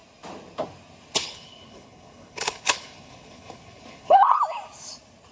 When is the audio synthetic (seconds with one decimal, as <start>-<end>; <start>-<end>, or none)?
1.2-4.4